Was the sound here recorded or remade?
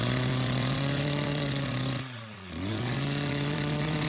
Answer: remade